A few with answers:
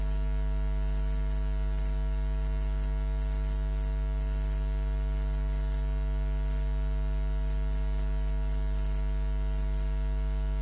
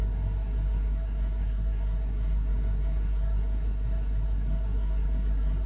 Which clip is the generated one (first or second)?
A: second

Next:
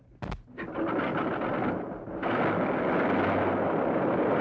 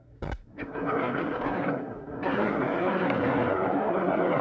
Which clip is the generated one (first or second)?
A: second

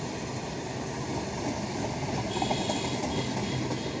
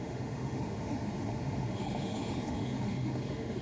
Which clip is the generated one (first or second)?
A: second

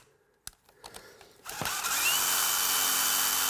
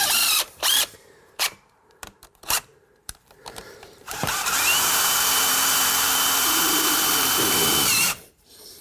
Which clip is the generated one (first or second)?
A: second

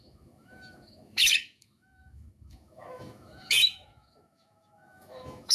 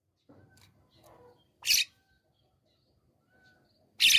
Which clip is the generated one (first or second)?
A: first